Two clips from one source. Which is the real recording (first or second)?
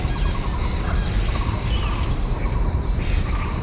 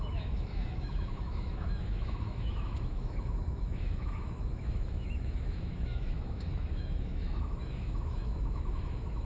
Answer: first